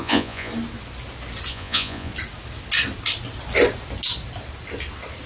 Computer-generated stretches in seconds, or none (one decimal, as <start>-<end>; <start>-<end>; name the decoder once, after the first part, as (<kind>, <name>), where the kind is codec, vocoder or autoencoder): 0.0-0.5 (vocoder, Vocos); 1.5-2.1